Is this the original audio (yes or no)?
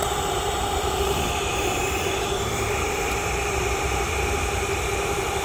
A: no